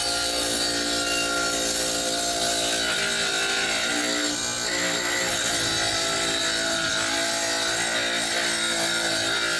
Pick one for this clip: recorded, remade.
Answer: recorded